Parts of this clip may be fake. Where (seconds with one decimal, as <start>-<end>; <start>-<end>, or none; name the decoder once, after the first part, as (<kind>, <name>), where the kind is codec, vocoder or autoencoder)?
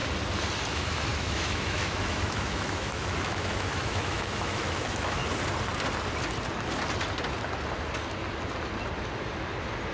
0.7-5.2 (autoencoder, DAC-VAE)